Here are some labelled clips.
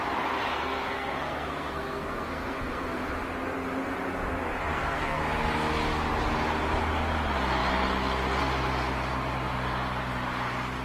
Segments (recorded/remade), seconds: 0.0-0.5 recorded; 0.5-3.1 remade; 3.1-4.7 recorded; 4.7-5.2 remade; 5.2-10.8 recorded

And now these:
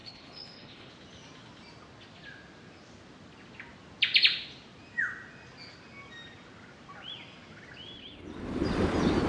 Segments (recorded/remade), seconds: 0.0-0.9 remade; 0.9-9.3 recorded

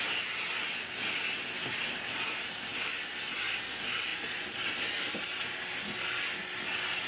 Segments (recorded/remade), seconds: 0.0-7.1 recorded

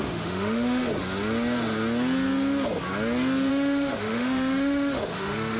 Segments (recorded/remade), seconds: 0.0-0.9 remade; 0.9-3.5 recorded; 3.5-5.6 remade

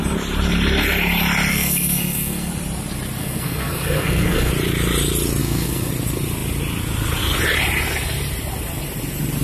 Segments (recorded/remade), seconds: 0.0-1.5 recorded; 1.5-2.5 remade; 2.5-3.2 recorded; 3.2-4.5 remade; 4.5-5.4 recorded; 5.4-5.9 remade; 5.9-9.4 recorded